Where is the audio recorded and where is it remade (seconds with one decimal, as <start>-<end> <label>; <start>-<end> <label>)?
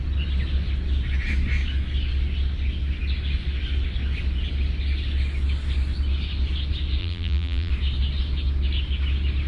0.0-7.0 recorded; 7.0-7.7 remade; 7.7-9.5 recorded